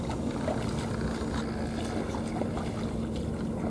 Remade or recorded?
recorded